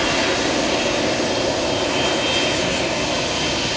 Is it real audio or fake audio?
real